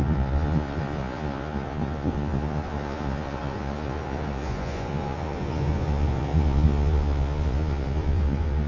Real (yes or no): no